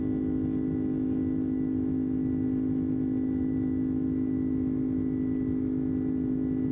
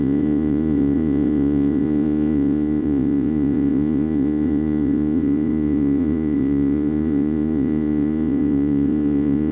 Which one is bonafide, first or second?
first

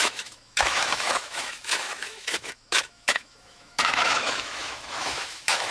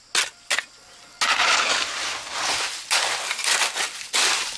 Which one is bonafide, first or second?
second